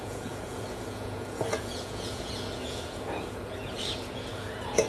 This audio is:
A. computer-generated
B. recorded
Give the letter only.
A